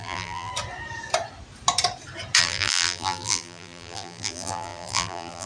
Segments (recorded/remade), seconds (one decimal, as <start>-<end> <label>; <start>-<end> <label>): 0.0-0.5 remade; 0.5-2.4 recorded; 2.4-5.5 remade